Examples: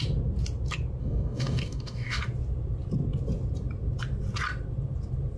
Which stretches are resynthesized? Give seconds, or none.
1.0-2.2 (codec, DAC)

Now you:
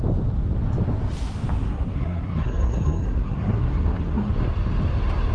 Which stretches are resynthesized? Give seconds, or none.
1.7-4.3 (codec, SNAC)

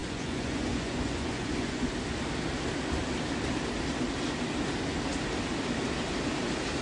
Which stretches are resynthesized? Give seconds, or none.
0.0-1.9 (vocoder, Vocos)